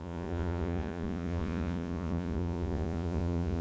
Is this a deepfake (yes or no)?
yes